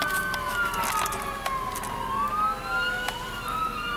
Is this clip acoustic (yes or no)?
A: yes